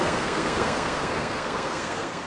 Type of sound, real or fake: fake